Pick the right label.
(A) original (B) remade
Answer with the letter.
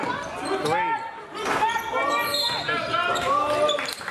A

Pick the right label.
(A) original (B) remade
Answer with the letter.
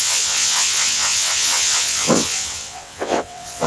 B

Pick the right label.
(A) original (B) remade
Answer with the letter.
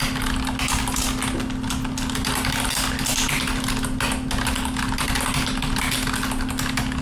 A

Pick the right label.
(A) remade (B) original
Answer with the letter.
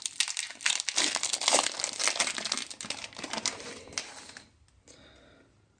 B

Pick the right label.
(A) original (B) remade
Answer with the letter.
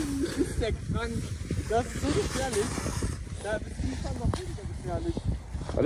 A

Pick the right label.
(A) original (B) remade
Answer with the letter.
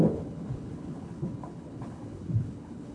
B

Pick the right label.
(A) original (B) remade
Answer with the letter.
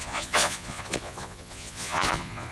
B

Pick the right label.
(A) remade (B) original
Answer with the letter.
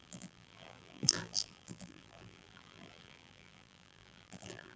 A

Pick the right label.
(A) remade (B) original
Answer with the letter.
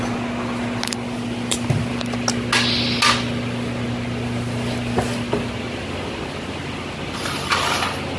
B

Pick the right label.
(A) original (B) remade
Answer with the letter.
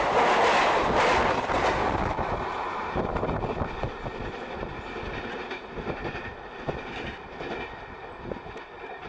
A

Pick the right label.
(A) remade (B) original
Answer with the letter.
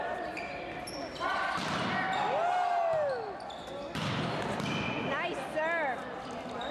B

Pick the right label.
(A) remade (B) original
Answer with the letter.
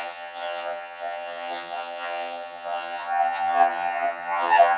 A